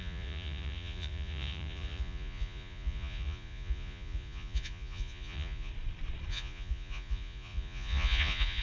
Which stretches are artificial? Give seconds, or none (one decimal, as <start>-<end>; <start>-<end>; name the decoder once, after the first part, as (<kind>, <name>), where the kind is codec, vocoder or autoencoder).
0.0-5.7 (vocoder, Vocos); 6.3-8.6